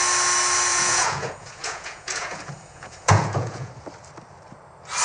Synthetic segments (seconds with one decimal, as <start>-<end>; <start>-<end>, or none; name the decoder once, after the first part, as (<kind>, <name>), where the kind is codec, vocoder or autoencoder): 0.7-3.7 (vocoder, Vocos)